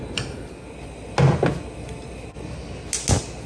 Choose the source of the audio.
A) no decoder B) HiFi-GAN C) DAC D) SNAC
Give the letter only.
A